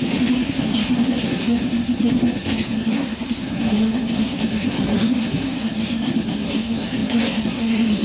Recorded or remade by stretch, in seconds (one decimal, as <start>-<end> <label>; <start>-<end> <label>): 0.0-8.0 remade